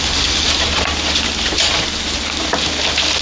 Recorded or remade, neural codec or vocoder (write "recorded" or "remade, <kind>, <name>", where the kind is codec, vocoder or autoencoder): recorded